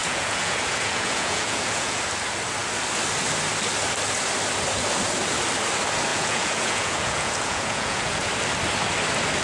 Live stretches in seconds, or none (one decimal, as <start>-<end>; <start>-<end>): 2.0-6.1; 8.3-9.4